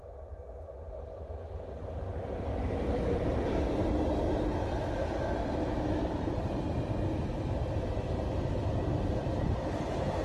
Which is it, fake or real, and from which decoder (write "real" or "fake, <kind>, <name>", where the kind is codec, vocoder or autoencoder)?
real